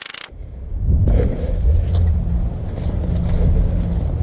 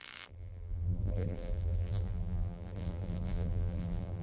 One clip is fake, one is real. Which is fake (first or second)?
second